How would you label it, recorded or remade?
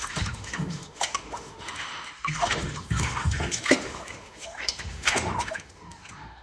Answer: remade